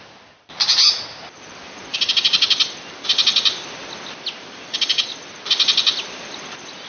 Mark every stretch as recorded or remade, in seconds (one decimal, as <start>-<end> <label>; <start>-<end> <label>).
0.0-6.9 recorded

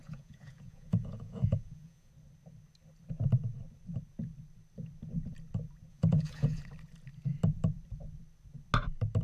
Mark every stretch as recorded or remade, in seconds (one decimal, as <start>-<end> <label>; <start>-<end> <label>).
0.0-2.1 remade; 2.1-5.9 recorded; 5.9-6.6 remade; 6.6-9.2 recorded

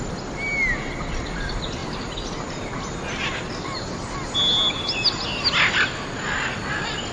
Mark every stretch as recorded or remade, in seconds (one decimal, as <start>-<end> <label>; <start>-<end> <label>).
0.0-7.1 recorded

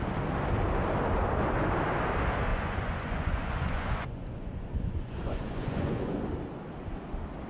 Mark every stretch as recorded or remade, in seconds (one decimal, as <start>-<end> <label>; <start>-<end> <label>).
0.0-2.5 recorded; 2.5-6.2 remade; 6.2-7.5 recorded